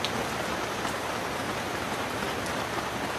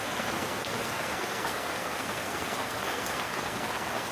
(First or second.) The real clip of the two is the first